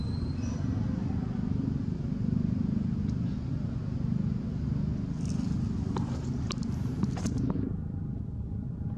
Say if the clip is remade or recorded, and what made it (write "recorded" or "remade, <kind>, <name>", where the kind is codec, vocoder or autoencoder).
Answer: recorded